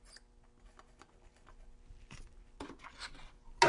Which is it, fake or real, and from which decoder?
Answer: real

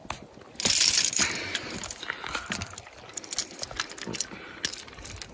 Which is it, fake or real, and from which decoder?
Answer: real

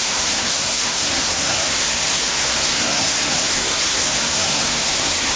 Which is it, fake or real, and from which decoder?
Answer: fake, codec, SNAC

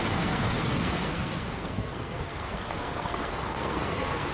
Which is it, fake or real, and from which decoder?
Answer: fake, codec, SNAC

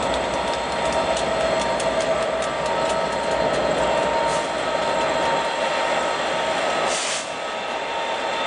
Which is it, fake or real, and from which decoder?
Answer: real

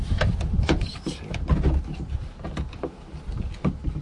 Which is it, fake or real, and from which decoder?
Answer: real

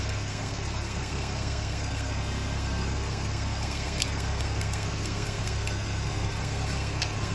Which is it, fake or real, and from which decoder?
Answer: fake, codec, SNAC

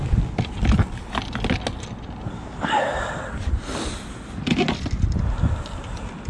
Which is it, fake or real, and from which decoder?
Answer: real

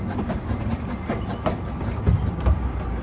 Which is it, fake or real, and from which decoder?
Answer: real